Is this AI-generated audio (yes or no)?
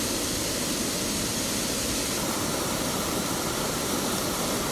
no